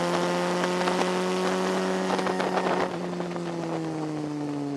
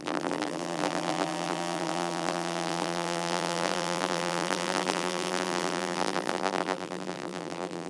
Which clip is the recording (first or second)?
first